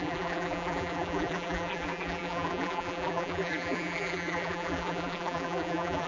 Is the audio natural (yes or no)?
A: no